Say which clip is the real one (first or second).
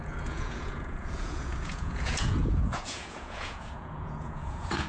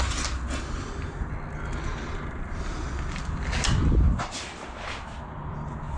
second